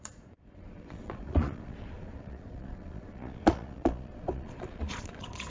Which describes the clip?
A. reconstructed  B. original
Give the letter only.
A